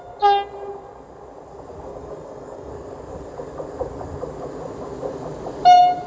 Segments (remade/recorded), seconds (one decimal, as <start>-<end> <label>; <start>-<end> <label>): 0.0-1.9 recorded; 1.9-2.7 remade; 2.7-6.1 recorded